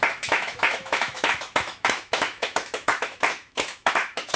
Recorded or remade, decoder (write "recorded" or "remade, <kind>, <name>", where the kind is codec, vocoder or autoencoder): remade, autoencoder, DAC-VAE